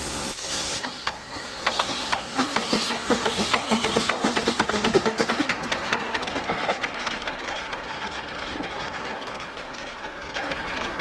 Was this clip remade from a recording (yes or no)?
yes